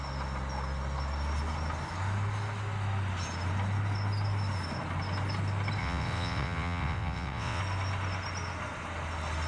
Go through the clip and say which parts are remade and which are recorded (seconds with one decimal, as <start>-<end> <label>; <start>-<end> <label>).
0.0-5.8 recorded; 5.8-7.6 remade; 7.6-9.5 recorded